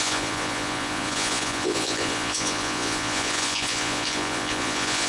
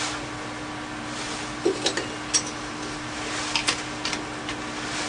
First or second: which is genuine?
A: second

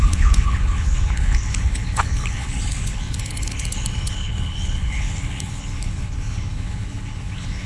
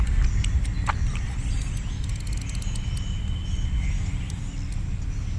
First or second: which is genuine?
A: second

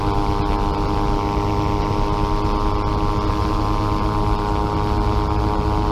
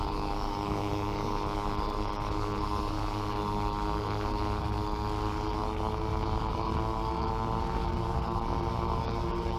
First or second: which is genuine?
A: first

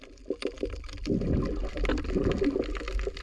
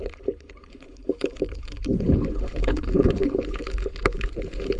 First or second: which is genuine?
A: first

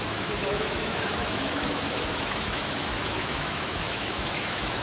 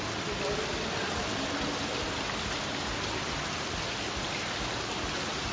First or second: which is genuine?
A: second